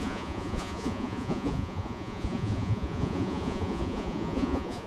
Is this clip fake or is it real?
fake